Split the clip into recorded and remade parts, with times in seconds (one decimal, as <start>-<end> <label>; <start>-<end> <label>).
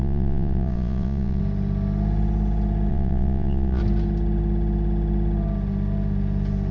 0.0-1.4 remade; 1.4-2.9 recorded; 2.9-3.8 remade; 3.8-6.7 recorded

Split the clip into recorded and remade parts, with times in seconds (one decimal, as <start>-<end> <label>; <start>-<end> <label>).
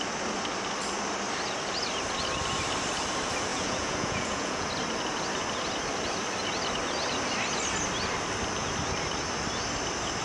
0.0-3.5 recorded; 3.5-4.7 remade; 4.7-10.2 recorded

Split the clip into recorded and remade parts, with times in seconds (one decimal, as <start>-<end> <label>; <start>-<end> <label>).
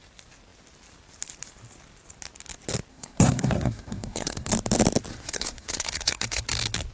0.0-2.9 recorded; 2.9-4.5 remade; 4.5-5.1 recorded; 5.1-6.4 remade; 6.4-6.9 recorded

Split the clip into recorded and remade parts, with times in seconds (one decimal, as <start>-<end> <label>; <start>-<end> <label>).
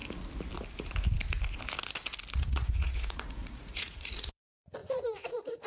0.0-2.3 recorded; 2.3-5.7 remade